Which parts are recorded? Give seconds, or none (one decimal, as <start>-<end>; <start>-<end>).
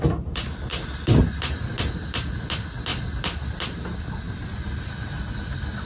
0.0-5.9